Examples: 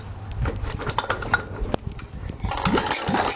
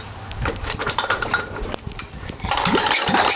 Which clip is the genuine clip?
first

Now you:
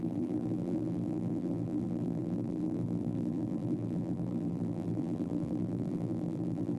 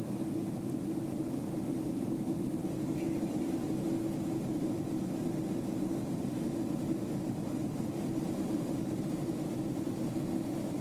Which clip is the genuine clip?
second